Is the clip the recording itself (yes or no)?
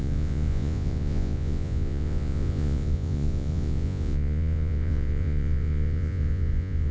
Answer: no